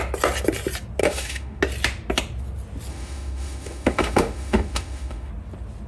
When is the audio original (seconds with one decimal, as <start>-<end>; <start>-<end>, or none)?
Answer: 0.0-1.0; 1.6-2.9; 5.3-5.9